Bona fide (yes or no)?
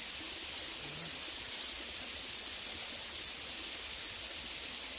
yes